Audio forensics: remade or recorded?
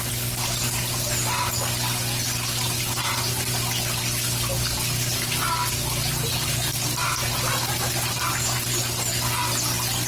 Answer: recorded